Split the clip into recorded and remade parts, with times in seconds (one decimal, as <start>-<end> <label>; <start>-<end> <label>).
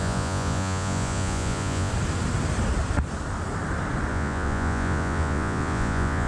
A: 0.0-1.9 remade; 1.9-4.1 recorded; 4.1-6.3 remade